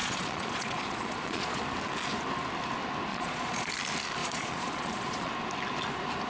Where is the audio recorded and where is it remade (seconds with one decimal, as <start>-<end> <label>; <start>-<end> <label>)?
0.0-1.6 remade; 1.6-3.1 recorded; 3.1-3.7 remade; 3.7-4.2 recorded; 4.2-5.3 remade; 5.3-6.3 recorded